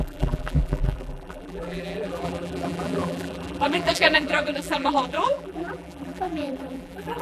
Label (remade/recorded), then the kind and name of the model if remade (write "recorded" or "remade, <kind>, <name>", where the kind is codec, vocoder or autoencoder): remade, vocoder, BigVGAN v2